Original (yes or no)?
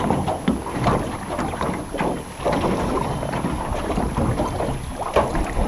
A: yes